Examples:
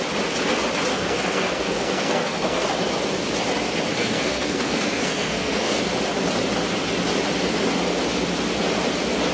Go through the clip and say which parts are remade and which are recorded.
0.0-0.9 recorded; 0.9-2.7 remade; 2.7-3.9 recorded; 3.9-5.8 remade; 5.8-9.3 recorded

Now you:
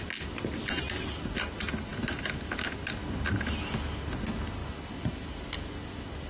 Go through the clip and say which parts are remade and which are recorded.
0.0-4.6 recorded; 4.6-5.5 remade; 5.5-6.3 recorded

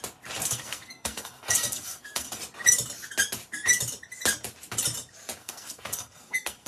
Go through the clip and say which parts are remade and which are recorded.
0.0-0.4 recorded; 0.4-2.4 remade; 2.4-5.4 recorded; 5.4-6.7 remade

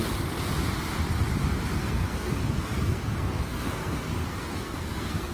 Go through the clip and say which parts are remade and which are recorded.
0.0-1.8 recorded; 1.8-5.3 remade

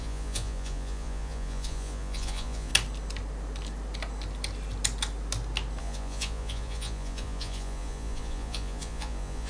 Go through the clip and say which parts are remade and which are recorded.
0.0-2.7 remade; 2.7-5.8 recorded; 5.8-9.5 remade

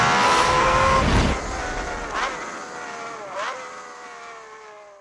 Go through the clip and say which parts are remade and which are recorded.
0.0-0.4 recorded; 0.4-1.0 remade; 1.0-5.0 recorded

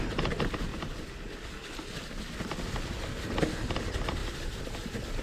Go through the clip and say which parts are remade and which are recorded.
0.0-0.7 remade; 0.7-3.8 recorded; 3.8-4.2 remade; 4.2-5.2 recorded